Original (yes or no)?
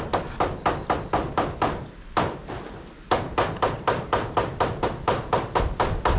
yes